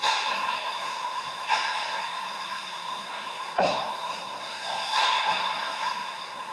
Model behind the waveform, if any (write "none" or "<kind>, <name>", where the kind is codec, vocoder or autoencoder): codec, SNAC